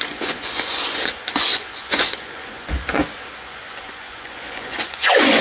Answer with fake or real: fake